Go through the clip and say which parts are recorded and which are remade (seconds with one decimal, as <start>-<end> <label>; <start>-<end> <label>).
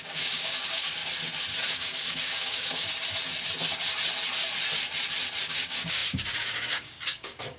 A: 0.0-1.0 remade; 1.0-1.7 recorded; 1.7-2.9 remade; 2.9-5.4 recorded; 5.4-7.6 remade